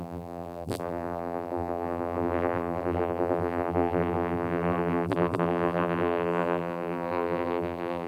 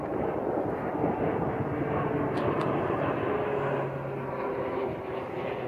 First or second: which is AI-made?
first